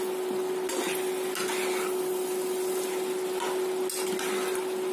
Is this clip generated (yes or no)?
no